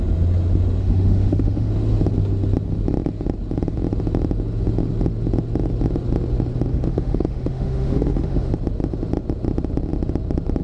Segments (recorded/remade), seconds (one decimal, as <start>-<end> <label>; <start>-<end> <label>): 0.0-0.8 recorded; 0.8-1.7 remade; 1.7-6.7 recorded; 6.7-8.5 remade; 8.5-10.6 recorded